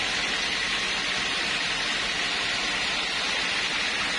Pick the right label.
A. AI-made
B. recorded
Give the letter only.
B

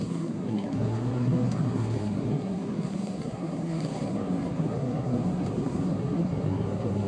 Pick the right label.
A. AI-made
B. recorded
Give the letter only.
A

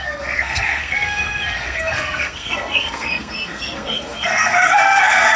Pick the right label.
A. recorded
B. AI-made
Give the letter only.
B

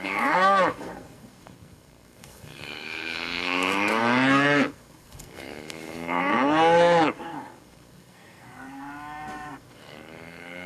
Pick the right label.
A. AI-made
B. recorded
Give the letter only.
A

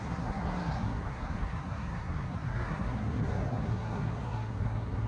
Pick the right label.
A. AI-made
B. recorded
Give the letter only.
A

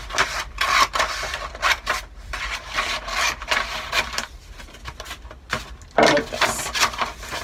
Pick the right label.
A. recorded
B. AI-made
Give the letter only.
A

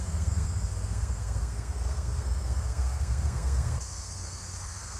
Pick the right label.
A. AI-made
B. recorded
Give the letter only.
A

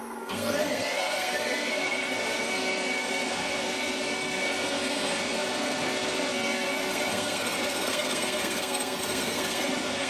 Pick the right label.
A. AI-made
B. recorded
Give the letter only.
A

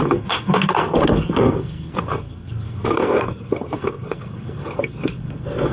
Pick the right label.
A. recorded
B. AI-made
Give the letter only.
B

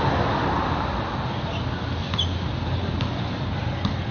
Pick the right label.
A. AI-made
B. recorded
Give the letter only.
B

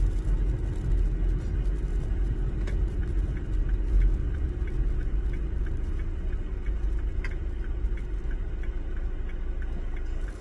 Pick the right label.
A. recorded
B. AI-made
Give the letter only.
A